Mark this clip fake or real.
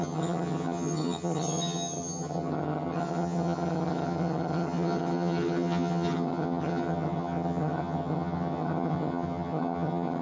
fake